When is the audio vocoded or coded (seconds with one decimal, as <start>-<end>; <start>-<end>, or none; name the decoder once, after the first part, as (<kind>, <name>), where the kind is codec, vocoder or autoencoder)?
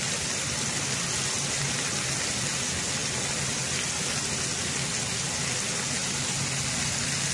none